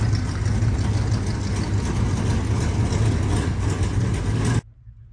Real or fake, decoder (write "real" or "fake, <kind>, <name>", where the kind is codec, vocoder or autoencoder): real